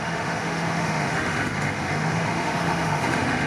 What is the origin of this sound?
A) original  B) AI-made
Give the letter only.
B